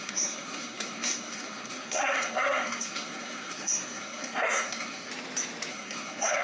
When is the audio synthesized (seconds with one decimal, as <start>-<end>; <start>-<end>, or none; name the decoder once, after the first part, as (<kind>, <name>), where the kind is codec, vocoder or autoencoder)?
0.0-5.1 (codec, SNAC); 5.7-6.4